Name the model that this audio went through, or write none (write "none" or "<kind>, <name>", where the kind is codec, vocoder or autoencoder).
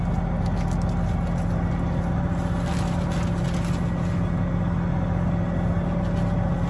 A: none